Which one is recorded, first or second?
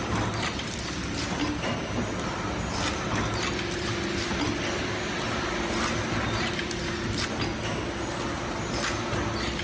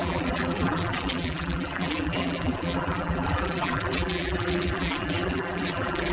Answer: first